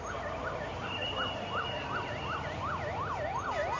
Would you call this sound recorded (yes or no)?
yes